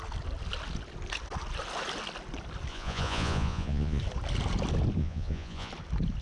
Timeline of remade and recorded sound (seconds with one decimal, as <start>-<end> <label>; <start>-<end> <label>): 0.0-2.7 recorded; 2.7-4.0 remade; 4.0-5.0 recorded; 5.0-5.7 remade; 5.7-6.2 recorded